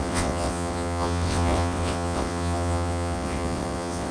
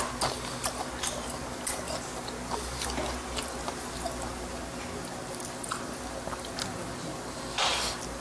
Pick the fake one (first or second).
first